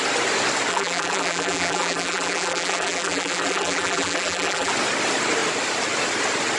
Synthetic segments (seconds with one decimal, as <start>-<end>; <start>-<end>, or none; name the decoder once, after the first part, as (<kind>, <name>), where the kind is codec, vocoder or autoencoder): 0.7-4.7 (vocoder, BigVGAN v2)